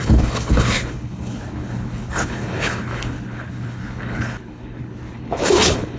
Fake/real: fake